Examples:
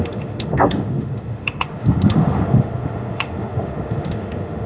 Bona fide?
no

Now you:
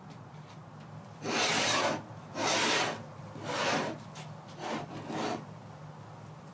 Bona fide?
yes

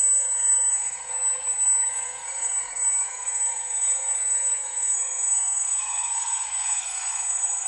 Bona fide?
no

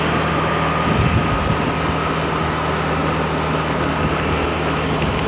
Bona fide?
yes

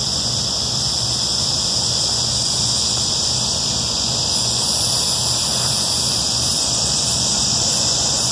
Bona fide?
no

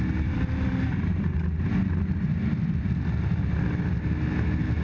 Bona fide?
yes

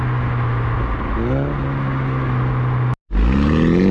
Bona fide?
yes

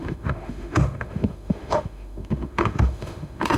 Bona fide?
no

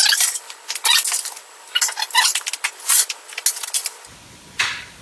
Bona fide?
yes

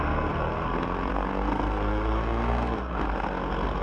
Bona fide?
no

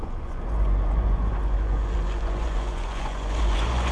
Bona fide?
no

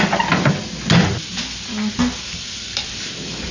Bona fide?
yes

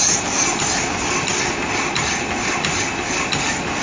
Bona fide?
yes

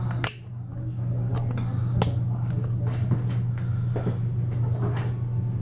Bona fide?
yes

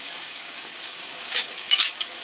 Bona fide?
no